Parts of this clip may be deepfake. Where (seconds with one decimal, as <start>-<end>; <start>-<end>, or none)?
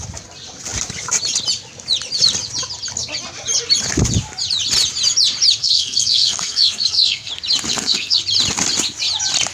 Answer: 5.6-7.3; 7.7-8.2